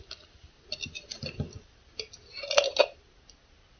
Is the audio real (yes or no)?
yes